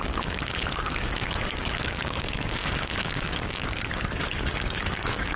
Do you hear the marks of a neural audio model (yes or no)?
yes